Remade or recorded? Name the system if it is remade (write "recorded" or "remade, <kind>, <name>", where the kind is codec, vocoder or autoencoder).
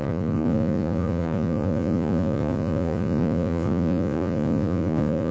remade, vocoder, Vocos